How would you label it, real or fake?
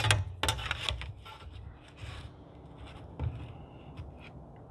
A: real